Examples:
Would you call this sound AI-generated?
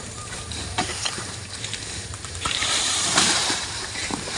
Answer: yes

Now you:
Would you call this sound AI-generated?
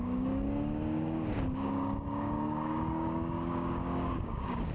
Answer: yes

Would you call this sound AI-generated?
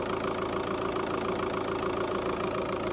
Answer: no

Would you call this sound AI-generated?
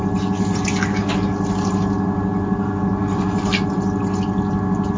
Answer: no